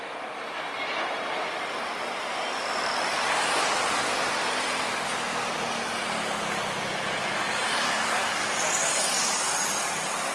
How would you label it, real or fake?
real